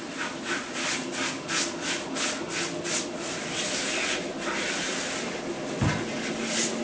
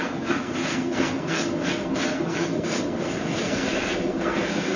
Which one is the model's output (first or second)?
second